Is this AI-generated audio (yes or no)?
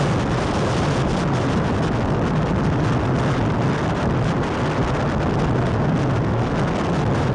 no